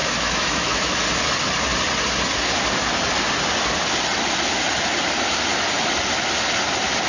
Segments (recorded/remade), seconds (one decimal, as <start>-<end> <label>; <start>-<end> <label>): 0.0-0.9 remade; 0.9-7.1 recorded